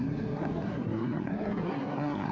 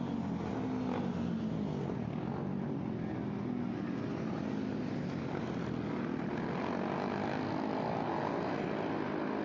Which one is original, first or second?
second